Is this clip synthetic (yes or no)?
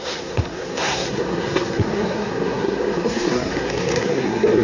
yes